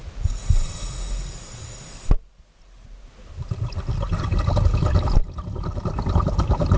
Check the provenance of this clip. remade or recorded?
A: recorded